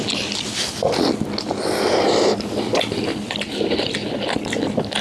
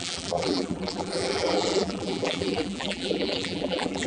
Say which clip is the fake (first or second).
second